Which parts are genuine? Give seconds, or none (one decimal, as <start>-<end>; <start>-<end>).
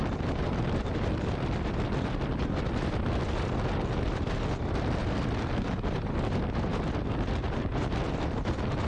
0.0-8.9